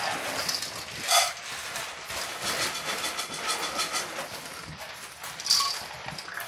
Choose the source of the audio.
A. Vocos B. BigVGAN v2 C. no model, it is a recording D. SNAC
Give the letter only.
C